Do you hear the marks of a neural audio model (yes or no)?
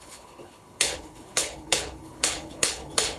yes